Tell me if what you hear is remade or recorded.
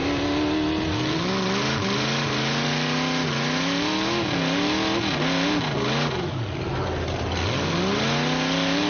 recorded